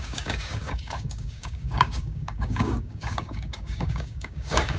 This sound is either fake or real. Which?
fake